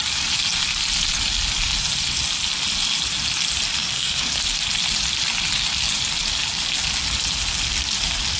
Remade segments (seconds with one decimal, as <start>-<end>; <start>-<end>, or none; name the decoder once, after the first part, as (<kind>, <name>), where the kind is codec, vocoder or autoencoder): 3.8-4.3 (codec, SNAC)